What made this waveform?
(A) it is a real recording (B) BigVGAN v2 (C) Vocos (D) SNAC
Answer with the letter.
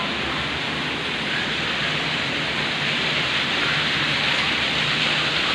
A